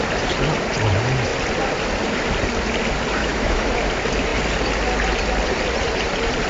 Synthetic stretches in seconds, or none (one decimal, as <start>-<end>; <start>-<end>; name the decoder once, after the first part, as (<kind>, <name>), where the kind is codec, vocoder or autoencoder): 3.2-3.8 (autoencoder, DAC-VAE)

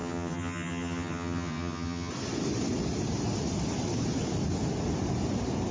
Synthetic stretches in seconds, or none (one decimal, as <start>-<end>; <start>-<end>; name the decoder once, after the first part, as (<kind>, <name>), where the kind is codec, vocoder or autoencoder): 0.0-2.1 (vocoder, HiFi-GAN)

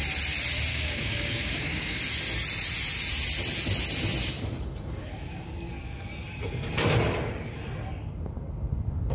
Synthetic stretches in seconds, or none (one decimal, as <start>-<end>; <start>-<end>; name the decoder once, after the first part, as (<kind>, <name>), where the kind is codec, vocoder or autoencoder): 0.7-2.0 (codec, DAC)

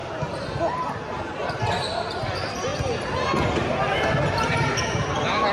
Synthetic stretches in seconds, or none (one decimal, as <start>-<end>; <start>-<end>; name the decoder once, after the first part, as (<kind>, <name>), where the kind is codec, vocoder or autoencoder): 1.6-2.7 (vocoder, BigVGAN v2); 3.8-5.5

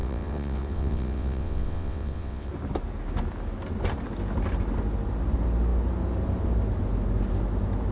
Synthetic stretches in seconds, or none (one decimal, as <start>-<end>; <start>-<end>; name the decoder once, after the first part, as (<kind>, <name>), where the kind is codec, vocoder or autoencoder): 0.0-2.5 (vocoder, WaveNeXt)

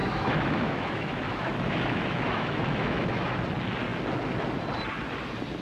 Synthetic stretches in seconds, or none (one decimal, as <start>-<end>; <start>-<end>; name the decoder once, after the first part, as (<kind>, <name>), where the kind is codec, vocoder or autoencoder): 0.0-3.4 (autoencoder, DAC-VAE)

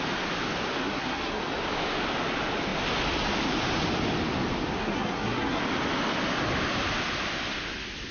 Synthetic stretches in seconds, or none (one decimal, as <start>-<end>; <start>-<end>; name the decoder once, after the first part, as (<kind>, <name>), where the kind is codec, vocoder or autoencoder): 0.8-1.4 (codec, SNAC); 4.8-5.6

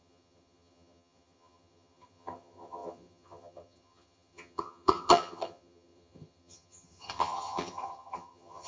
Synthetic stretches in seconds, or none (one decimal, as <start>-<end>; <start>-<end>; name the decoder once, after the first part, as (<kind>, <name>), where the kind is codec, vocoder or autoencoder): 0.0-8.7 (vocoder, HiFi-GAN)